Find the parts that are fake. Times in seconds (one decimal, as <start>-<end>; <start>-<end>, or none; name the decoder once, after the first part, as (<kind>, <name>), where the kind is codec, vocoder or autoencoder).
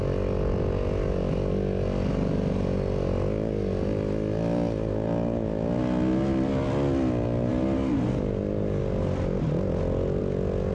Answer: none